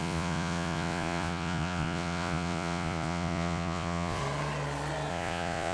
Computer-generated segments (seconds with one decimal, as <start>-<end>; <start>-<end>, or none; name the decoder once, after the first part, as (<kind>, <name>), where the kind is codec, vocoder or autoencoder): 0.0-4.2 (vocoder, Vocos); 5.1-5.7